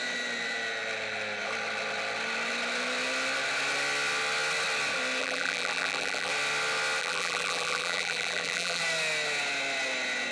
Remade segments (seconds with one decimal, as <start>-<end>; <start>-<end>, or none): 5.2-6.3; 7.0-8.8